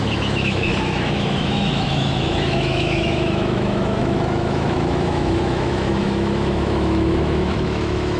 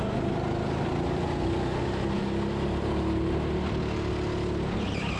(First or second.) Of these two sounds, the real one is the second